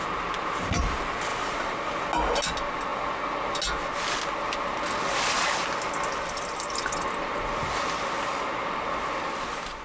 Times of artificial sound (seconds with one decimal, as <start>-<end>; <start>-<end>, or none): 1.3-1.9